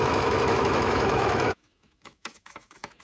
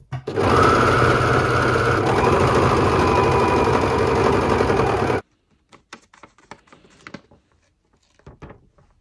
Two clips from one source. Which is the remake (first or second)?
first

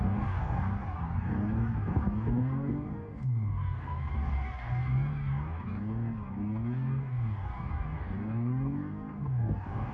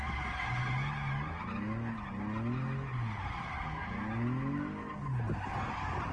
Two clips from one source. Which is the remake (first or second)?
first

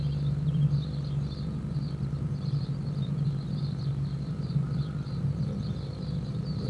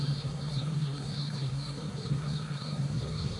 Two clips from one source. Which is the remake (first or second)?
second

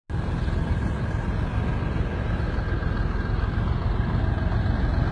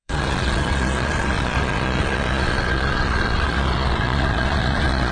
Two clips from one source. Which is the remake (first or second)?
second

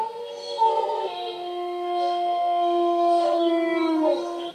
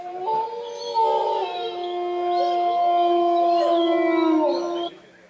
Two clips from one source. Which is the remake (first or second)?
first